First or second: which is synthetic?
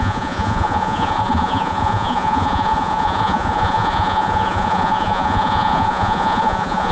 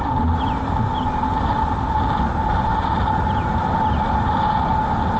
first